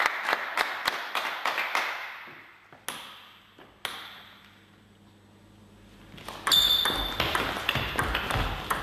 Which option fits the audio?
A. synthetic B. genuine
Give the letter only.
B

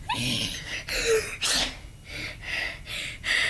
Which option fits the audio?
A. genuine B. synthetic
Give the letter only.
A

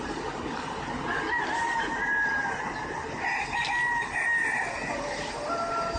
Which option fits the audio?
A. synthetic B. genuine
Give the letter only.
B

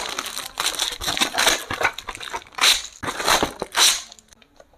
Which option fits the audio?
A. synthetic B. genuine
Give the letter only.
B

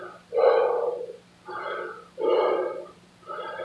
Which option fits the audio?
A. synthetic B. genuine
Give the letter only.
B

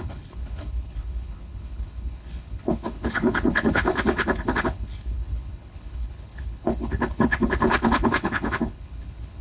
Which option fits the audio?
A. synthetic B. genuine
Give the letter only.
A